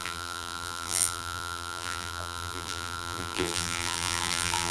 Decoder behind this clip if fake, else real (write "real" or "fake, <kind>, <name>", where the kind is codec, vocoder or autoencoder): fake, vocoder, BigVGAN v2